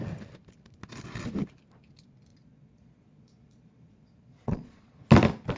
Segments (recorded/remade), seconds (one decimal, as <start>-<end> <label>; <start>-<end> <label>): 0.0-2.3 recorded; 2.3-5.0 remade; 5.0-5.6 recorded